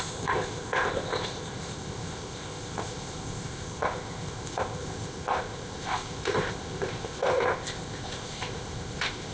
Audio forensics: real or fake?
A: fake